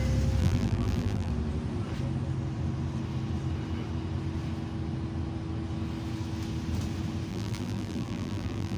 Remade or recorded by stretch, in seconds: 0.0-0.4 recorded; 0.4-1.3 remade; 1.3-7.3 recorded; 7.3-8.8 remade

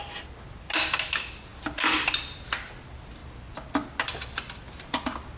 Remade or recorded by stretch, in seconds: 0.0-5.4 recorded

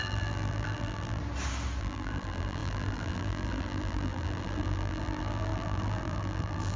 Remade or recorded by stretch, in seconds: 0.0-1.2 remade; 1.2-1.8 recorded; 1.8-6.8 remade